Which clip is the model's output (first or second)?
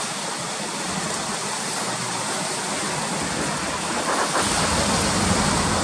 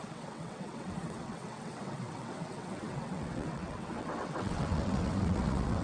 second